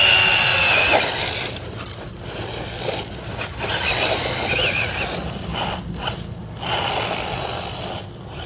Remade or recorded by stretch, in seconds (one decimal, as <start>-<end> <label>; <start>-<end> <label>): 0.0-8.5 recorded